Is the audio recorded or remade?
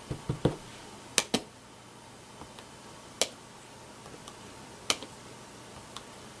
recorded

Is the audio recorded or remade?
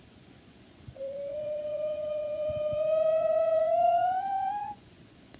remade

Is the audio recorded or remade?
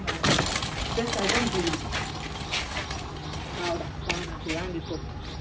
recorded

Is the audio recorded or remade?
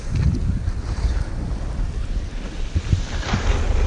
recorded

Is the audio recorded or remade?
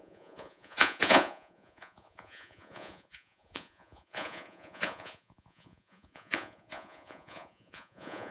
remade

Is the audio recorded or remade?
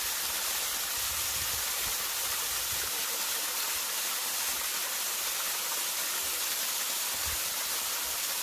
recorded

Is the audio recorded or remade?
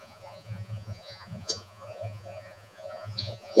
remade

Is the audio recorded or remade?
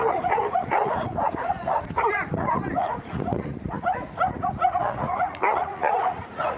remade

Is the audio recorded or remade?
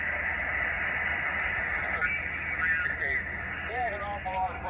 recorded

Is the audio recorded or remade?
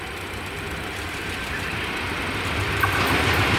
recorded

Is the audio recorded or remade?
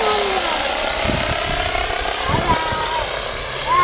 recorded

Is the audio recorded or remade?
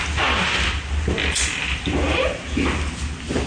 recorded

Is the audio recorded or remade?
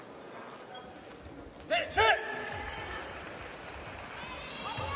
recorded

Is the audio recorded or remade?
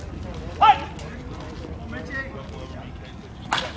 recorded